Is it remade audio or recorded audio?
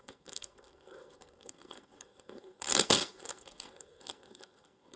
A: remade